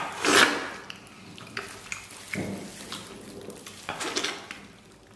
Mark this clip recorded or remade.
recorded